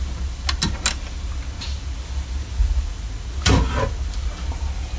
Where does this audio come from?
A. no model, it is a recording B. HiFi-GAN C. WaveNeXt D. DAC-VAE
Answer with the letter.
A